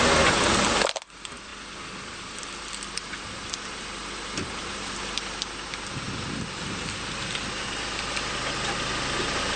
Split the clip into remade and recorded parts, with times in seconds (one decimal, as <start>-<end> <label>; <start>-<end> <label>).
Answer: 0.0-9.6 recorded